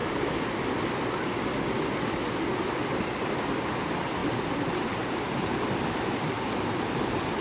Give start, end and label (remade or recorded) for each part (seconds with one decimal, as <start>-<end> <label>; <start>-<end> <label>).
0.0-7.4 recorded